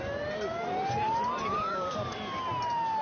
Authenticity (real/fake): real